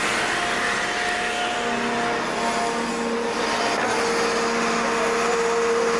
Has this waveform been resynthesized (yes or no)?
no